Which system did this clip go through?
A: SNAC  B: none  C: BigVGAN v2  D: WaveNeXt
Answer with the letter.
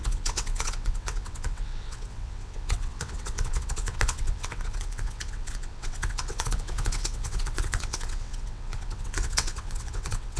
D